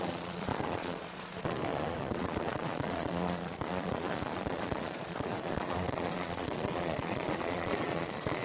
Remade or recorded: remade